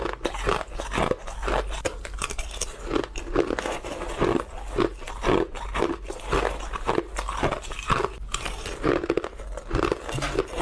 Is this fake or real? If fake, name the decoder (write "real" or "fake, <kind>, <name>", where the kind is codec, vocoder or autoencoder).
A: real